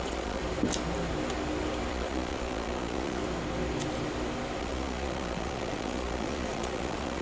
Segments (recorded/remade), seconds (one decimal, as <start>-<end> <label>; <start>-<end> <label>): 0.0-0.4 remade; 0.4-1.9 recorded; 1.9-3.2 remade; 3.2-4.6 recorded; 4.6-7.2 remade

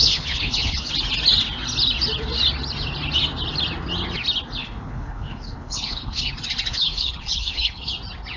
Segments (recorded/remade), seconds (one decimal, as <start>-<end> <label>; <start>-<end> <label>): 0.0-0.9 remade; 0.9-4.6 recorded; 4.6-6.3 remade; 6.3-6.7 recorded; 6.7-7.9 remade; 7.9-8.4 recorded

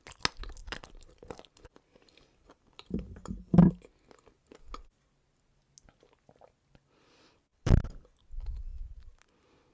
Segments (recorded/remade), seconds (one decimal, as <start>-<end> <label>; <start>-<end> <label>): 0.0-0.6 recorded; 0.6-3.7 remade; 3.7-7.5 recorded; 7.5-8.2 remade; 8.2-9.7 recorded

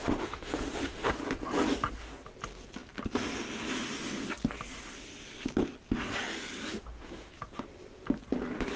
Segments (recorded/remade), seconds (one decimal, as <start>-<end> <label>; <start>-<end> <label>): 0.0-1.1 remade; 1.1-6.7 recorded; 6.7-7.3 remade; 7.3-8.8 recorded

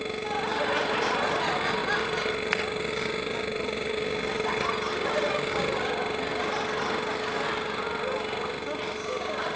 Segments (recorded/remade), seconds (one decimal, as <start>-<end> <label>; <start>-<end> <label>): 0.0-9.6 recorded

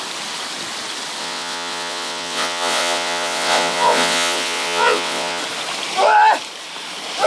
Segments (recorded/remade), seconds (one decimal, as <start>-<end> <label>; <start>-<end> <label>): 0.0-1.2 recorded; 1.2-5.4 remade; 5.4-7.3 recorded